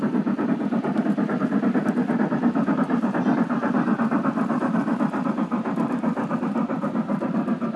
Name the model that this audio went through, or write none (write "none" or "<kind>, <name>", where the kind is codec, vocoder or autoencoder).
none